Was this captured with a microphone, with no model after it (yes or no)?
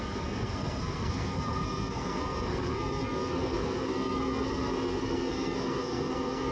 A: no